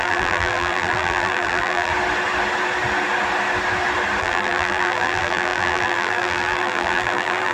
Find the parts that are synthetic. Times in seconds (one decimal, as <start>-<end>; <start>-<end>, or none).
0.0-1.9; 4.2-7.5